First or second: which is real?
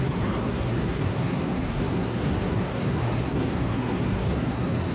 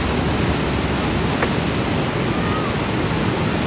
second